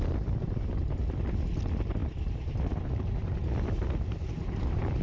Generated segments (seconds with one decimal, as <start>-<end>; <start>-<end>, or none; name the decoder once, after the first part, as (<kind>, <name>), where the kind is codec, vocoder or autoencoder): none